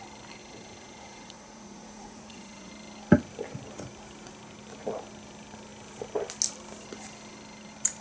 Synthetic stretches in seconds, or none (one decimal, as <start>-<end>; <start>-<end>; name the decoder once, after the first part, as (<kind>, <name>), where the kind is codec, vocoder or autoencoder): 0.4-2.7 (vocoder, Vocos)